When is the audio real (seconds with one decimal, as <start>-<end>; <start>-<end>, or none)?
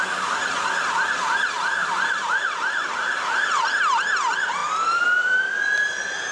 0.0-1.8; 2.6-4.6; 5.4-6.3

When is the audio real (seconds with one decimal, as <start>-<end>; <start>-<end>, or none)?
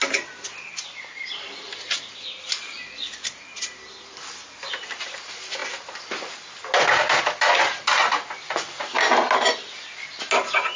0.0-10.8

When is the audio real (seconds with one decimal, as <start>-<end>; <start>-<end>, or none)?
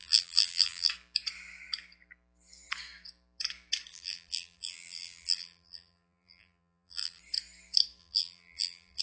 0.9-3.9; 7.2-8.0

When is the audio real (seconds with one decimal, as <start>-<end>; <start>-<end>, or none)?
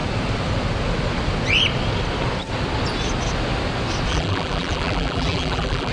0.0-4.1